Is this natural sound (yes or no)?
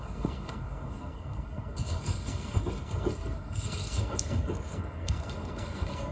no